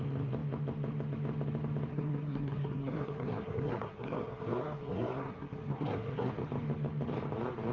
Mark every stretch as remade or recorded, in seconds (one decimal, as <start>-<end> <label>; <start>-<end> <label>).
0.0-1.9 recorded; 1.9-6.3 remade; 6.3-7.7 recorded